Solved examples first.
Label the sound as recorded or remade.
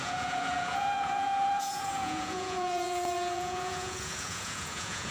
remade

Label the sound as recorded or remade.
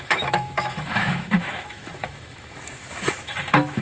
remade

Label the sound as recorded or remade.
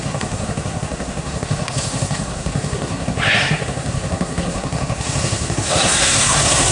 remade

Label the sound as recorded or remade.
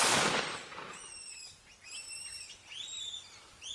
recorded